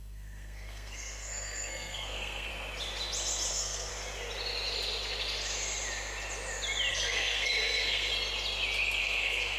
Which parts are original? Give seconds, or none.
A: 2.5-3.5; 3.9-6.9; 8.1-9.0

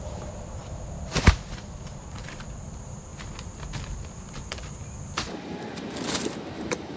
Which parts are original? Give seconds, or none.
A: 0.6-2.2; 3.1-4.2; 4.8-6.1

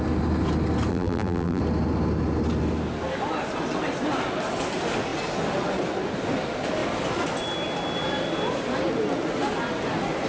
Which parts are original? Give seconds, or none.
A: 0.0-0.9; 1.6-10.3